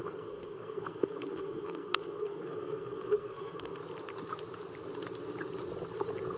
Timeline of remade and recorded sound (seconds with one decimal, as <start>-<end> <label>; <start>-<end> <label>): 0.0-3.8 remade; 3.8-6.4 recorded

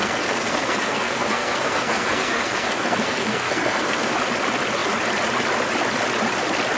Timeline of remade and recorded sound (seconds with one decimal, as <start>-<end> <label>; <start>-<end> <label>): 0.0-4.1 remade; 4.1-6.8 recorded

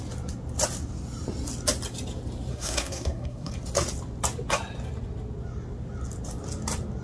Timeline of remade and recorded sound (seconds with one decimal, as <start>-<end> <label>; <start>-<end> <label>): 0.0-2.5 recorded; 2.5-3.5 remade; 3.5-7.0 recorded

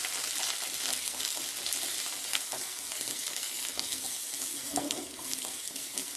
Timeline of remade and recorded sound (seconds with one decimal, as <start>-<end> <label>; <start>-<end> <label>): 0.0-0.9 recorded; 0.9-1.4 remade; 1.4-2.3 recorded; 2.3-6.2 remade

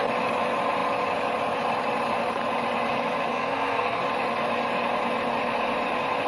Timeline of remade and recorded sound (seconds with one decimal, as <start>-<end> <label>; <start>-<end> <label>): 0.0-3.3 recorded; 3.3-4.0 remade; 4.0-6.3 recorded

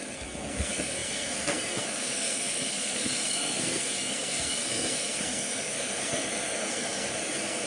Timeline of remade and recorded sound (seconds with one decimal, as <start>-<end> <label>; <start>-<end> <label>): 0.0-7.7 remade

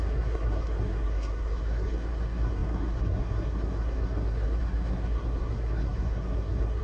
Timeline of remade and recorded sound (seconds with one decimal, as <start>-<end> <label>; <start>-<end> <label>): 0.0-6.8 remade

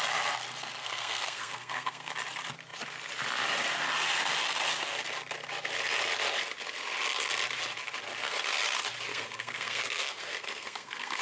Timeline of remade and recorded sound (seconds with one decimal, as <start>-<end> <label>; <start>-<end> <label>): 0.0-0.8 recorded; 0.8-2.1 remade; 2.1-9.1 recorded; 9.1-11.2 remade